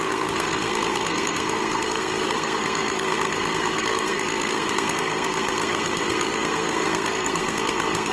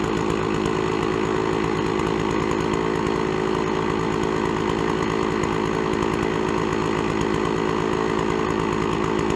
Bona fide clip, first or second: second